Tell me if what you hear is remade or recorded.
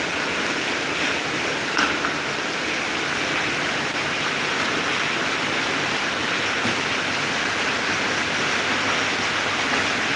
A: recorded